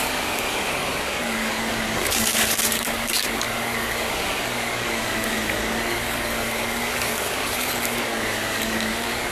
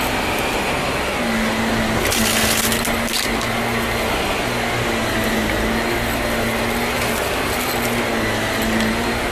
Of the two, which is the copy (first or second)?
first